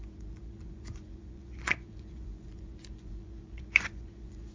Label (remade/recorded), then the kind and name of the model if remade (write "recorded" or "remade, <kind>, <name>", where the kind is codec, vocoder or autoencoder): remade, vocoder, Vocos